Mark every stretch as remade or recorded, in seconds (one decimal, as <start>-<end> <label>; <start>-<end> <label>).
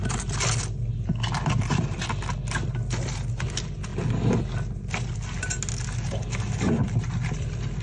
0.0-7.8 recorded